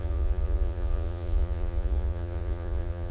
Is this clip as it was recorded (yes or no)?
no